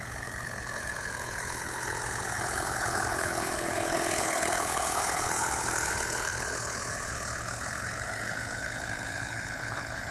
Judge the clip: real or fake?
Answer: fake